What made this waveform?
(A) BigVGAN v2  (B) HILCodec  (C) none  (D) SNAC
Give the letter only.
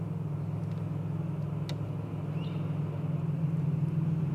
C